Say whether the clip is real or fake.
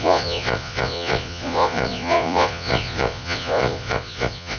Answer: fake